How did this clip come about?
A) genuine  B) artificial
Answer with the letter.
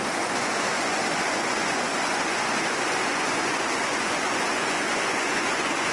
B